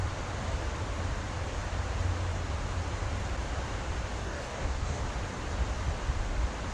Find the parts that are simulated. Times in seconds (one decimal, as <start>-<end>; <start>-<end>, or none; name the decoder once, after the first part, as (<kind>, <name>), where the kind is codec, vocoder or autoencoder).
4.2-5.0 (codec, DAC)